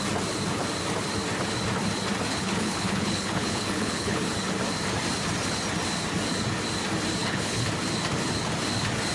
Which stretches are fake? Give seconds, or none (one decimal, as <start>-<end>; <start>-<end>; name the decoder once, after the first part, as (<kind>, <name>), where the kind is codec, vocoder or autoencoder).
2.3-4.2 (codec, HILCodec); 7.2-7.7